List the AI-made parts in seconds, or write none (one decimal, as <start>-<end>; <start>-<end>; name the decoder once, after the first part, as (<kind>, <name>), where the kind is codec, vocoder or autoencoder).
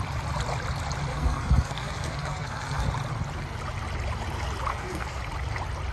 1.1-2.9 (codec, SNAC); 4.7-5.2